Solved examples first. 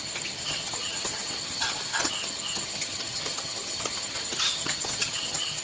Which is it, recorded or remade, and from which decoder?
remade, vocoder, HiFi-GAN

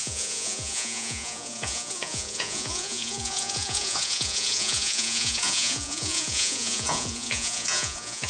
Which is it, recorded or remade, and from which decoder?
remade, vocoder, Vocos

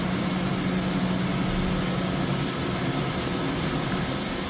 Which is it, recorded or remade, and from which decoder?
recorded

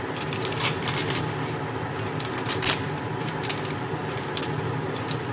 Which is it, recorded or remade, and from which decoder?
recorded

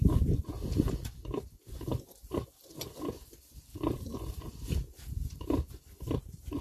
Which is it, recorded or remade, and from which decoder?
recorded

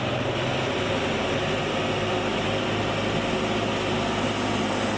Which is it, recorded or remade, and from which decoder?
recorded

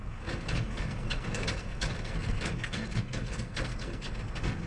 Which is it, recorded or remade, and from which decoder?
remade, codec, SNAC